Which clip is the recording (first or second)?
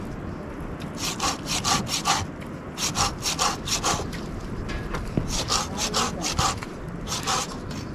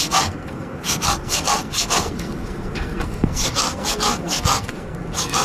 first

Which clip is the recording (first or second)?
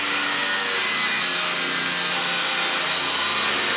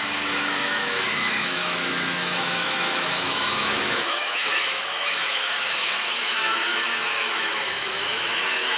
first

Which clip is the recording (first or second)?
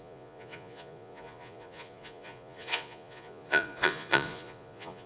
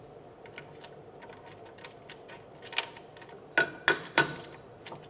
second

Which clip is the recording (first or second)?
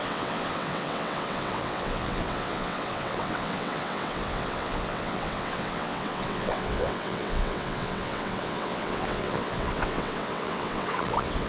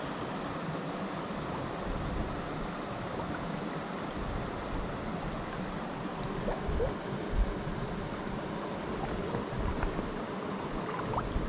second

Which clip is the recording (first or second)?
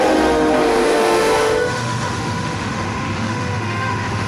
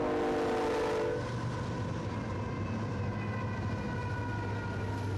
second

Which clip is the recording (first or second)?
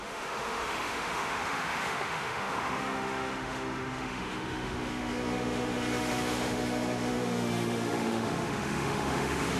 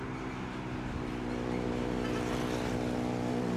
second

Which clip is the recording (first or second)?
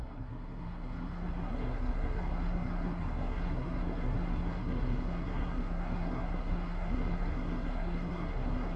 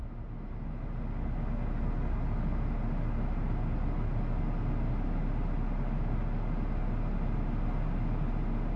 second